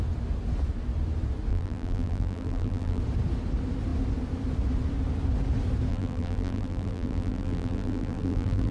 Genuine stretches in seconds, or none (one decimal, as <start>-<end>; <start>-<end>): 0.0-1.5; 3.0-5.9